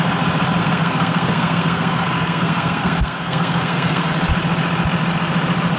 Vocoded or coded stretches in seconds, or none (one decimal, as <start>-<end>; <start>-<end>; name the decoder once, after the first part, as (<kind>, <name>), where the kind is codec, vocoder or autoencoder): 0.6-4.1 (codec, SNAC)